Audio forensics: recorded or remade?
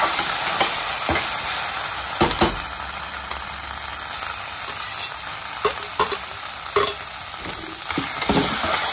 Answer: recorded